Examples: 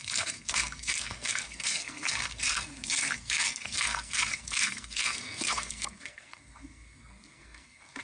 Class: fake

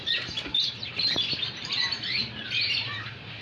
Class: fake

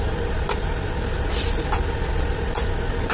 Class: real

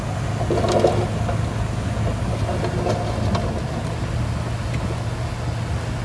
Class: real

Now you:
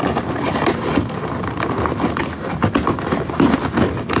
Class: real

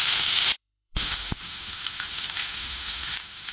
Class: fake